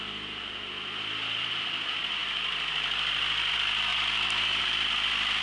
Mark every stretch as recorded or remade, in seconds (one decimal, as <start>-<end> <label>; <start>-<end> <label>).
0.0-5.4 recorded